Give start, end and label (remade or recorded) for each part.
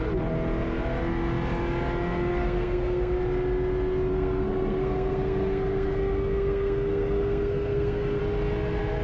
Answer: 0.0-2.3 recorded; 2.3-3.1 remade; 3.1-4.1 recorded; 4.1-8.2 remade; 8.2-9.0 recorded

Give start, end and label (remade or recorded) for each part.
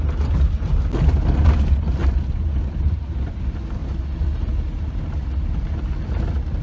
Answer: 0.0-2.0 recorded; 2.0-3.4 remade; 3.4-6.6 recorded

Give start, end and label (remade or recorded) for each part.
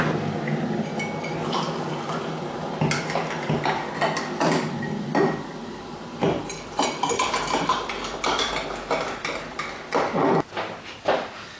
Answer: 0.0-11.6 recorded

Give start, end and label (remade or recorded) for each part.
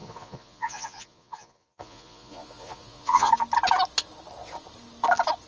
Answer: 0.0-3.3 remade; 3.3-5.5 recorded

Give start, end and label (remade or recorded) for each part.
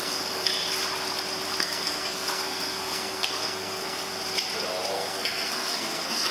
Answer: 0.0-0.5 remade; 0.5-1.6 recorded; 1.6-4.1 remade; 4.1-4.9 recorded; 4.9-6.3 remade